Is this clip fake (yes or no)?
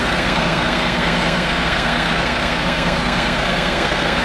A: yes